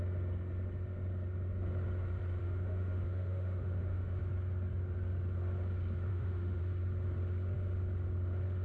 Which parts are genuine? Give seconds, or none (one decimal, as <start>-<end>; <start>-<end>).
0.0-2.4; 4.2-6.1; 6.6-8.6